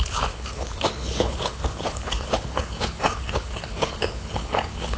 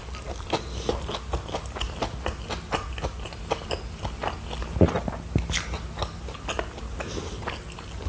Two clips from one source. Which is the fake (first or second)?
first